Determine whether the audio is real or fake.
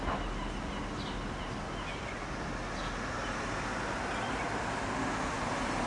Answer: real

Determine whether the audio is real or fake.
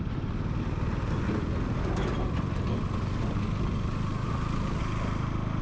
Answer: real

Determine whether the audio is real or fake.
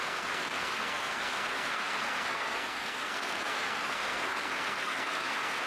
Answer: fake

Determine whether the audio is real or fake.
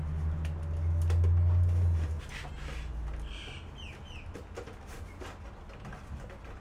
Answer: real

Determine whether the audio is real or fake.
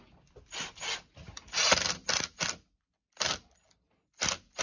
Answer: real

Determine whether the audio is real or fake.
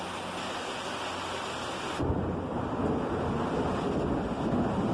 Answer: real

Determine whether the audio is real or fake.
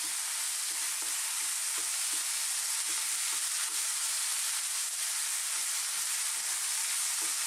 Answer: real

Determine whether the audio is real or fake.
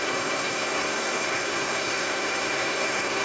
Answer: fake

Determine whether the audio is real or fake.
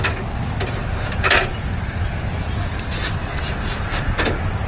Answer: real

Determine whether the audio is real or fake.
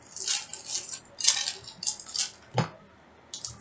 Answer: real